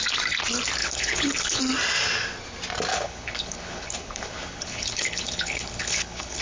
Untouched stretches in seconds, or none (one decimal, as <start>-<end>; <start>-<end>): 0.0-0.8; 1.6-2.9